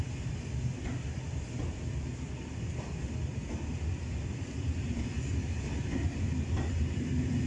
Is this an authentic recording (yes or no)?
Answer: yes